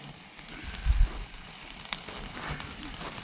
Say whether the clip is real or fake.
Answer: real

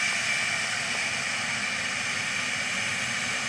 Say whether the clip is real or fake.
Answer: real